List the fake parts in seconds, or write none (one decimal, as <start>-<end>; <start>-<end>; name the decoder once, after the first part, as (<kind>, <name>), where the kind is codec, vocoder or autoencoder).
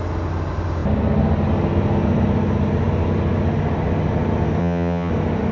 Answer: 4.6-5.1 (vocoder, HiFi-GAN)